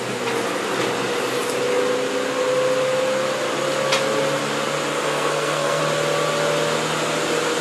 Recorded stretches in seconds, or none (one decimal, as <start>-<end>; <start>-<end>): 0.0-4.9; 5.8-7.6

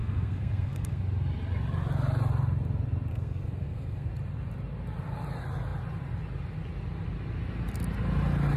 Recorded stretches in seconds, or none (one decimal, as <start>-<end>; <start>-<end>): 1.0-3.1; 4.1-8.6

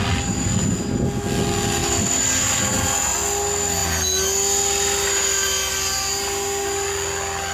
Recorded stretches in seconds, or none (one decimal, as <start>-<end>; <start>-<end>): 0.0-7.5

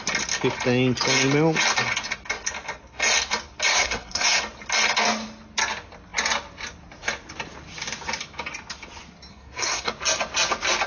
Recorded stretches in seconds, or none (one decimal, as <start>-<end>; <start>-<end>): 0.0-3.7; 4.4-9.3; 9.9-10.9

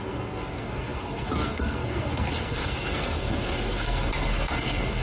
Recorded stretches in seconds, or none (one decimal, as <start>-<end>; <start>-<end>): none